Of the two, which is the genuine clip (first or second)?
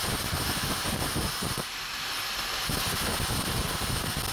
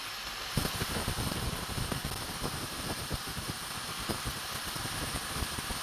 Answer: first